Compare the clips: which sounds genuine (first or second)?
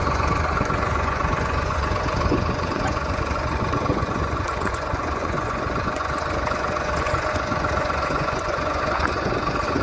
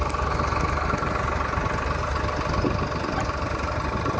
second